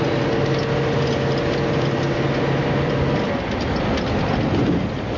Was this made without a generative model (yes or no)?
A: yes